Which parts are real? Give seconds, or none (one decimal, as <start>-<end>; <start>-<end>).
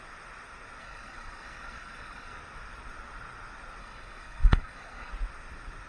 0.0-0.8; 2.4-3.8; 5.1-5.9